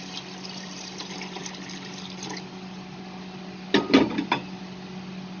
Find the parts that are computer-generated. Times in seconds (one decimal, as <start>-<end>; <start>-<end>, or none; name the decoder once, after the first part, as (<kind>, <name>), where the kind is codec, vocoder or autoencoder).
none